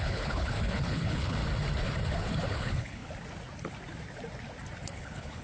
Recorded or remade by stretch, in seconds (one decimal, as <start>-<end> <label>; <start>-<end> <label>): 0.0-1.4 remade; 1.4-2.5 recorded; 2.5-3.0 remade; 3.0-4.9 recorded; 4.9-5.4 remade